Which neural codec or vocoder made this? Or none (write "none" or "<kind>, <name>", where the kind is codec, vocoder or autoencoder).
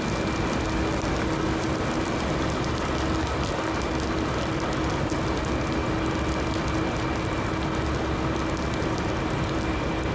none